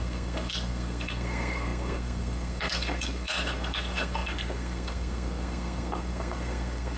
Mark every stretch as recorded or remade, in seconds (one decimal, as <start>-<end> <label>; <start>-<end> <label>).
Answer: 0.0-7.0 remade